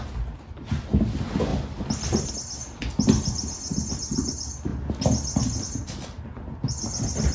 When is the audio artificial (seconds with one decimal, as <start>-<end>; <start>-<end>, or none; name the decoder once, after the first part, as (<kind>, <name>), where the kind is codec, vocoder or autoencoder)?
none